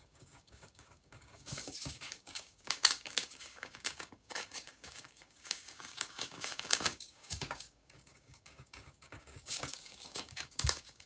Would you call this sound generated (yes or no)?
yes